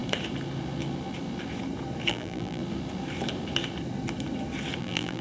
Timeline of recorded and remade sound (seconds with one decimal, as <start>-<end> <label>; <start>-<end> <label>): 0.0-2.1 recorded; 2.1-2.6 remade; 2.6-4.8 recorded; 4.8-5.2 remade